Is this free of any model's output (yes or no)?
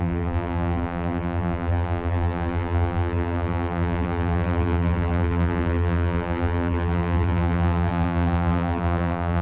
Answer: no